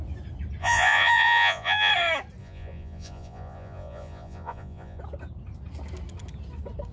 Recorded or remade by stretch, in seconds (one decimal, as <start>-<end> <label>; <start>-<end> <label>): 0.0-0.6 recorded; 0.6-1.9 remade; 1.9-2.4 recorded; 2.4-5.0 remade; 5.0-6.9 recorded